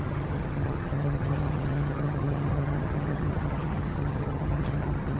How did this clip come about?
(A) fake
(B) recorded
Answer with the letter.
A